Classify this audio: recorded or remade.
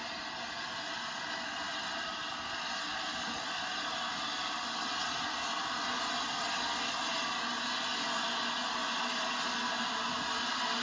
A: recorded